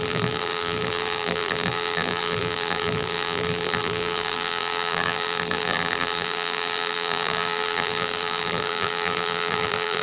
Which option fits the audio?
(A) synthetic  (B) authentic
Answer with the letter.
A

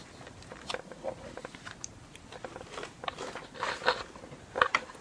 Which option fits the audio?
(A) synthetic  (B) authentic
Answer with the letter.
B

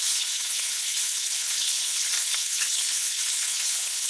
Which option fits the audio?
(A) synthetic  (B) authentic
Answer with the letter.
A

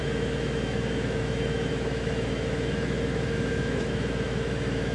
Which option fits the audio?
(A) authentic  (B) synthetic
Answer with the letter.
B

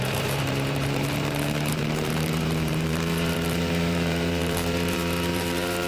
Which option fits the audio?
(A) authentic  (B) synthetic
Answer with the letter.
B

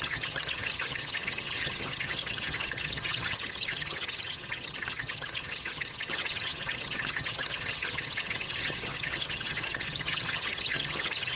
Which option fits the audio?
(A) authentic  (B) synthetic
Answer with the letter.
B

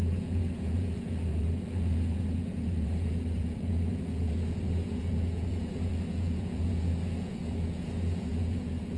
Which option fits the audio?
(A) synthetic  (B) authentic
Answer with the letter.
A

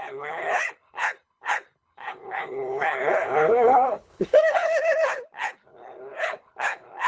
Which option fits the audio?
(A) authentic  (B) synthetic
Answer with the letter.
B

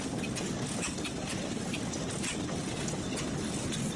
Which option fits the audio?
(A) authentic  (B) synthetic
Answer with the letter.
A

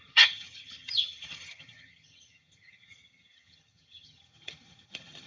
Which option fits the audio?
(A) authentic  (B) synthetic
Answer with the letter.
B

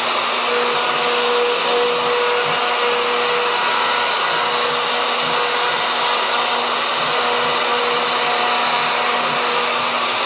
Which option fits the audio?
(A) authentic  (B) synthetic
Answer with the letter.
A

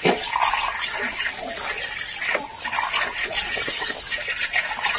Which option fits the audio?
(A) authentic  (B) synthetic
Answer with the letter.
A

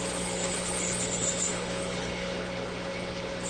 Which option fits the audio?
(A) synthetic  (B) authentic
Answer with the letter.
A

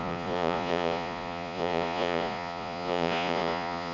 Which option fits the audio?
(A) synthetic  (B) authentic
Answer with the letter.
A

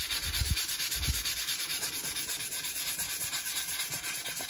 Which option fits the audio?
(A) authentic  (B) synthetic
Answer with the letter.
B